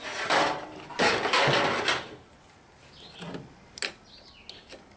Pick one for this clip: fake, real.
real